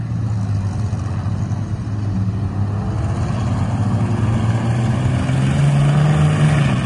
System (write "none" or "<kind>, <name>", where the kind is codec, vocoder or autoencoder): none